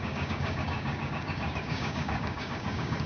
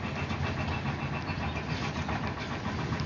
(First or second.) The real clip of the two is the second